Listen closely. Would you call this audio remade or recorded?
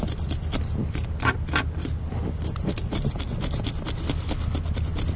recorded